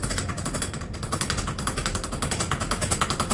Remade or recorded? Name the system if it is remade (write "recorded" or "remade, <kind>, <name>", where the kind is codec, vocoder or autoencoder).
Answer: recorded